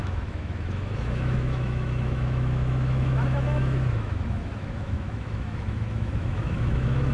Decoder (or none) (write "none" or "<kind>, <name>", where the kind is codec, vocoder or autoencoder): autoencoder, DAC-VAE